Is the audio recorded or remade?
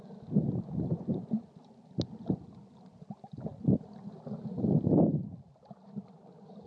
recorded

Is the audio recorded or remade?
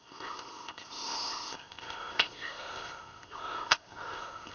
remade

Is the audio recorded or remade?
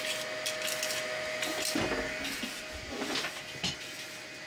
recorded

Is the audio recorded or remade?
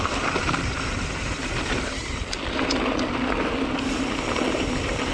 recorded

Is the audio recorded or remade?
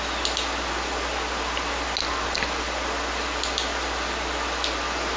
recorded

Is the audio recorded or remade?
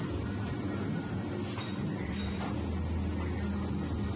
recorded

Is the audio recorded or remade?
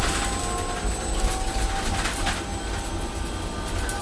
recorded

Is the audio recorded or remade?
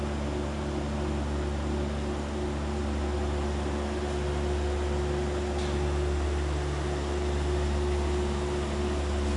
recorded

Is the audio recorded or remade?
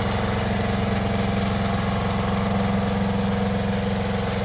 recorded